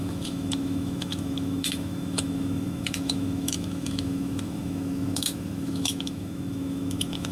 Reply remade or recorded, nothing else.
remade